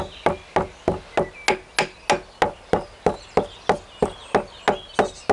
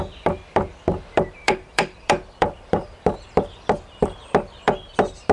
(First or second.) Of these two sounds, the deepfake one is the second